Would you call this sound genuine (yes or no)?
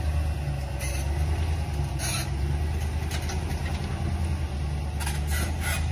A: yes